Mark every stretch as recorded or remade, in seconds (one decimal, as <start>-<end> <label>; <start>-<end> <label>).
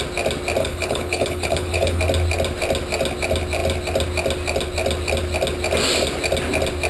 0.0-0.6 recorded; 0.6-2.0 remade; 2.0-6.9 recorded